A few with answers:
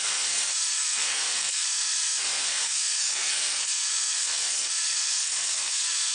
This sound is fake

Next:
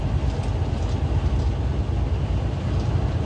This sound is real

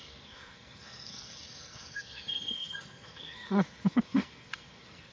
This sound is fake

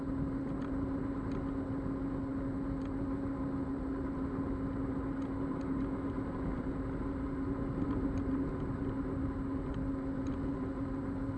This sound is real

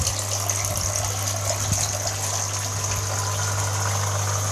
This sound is real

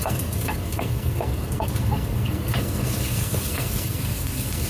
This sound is fake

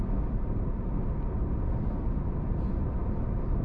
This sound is real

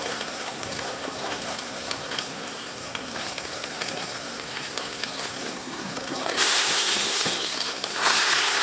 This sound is fake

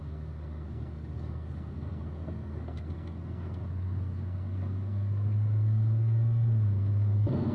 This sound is fake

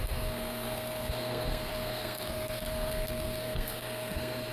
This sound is fake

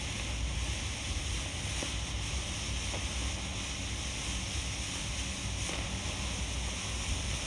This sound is real